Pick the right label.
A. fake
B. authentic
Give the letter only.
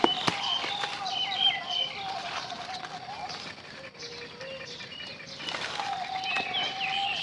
B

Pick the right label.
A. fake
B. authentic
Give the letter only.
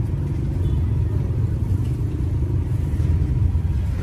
B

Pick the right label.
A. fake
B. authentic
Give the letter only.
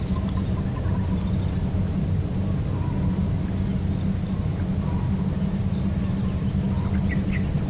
B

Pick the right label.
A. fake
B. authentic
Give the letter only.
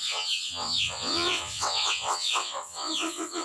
A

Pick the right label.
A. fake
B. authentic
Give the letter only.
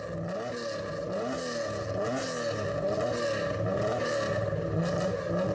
B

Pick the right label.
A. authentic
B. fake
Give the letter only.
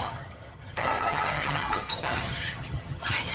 B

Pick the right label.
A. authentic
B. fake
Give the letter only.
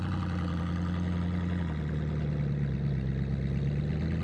A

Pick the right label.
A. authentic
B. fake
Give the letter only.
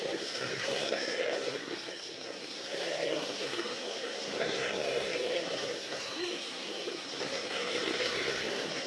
B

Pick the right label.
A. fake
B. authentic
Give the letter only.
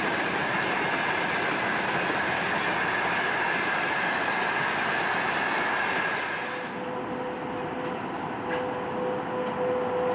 B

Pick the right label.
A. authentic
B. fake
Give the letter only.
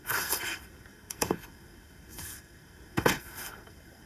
B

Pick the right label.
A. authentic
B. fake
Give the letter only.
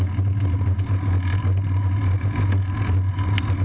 A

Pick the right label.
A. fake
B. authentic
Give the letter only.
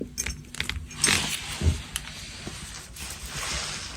B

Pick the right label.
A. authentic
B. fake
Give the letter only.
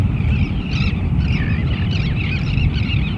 A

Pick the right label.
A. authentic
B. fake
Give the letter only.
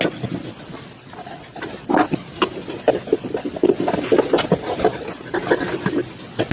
A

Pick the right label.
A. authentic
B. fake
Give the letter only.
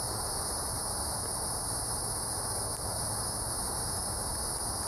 A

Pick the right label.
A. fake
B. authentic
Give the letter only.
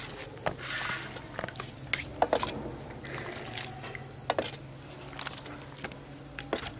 B